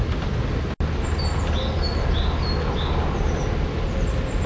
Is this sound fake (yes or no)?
no